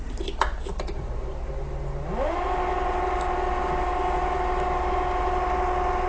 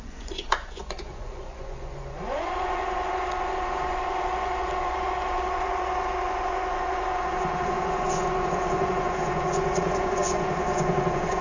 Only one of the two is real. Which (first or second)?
first